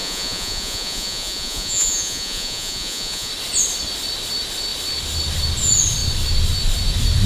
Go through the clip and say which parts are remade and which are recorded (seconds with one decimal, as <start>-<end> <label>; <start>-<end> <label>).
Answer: 0.0-3.3 remade; 3.3-7.3 recorded